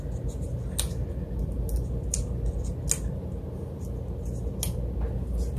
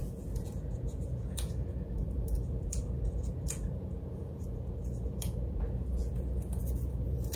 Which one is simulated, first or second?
second